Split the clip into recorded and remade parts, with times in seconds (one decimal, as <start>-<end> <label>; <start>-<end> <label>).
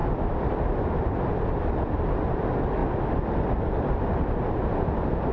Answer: 0.0-2.2 remade; 2.2-2.8 recorded; 2.8-4.0 remade; 4.0-5.3 recorded